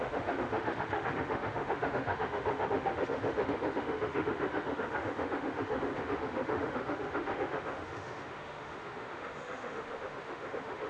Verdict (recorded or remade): remade